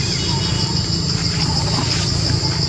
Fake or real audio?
real